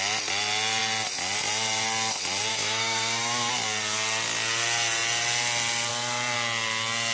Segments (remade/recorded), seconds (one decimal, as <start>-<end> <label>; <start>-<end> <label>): 0.0-2.5 recorded; 2.5-3.5 remade; 3.5-7.1 recorded

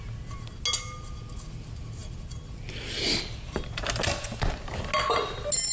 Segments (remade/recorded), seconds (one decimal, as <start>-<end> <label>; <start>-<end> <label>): 0.0-5.7 recorded